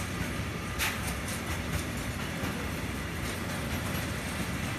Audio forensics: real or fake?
real